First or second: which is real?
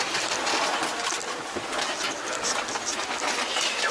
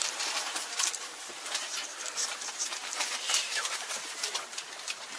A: first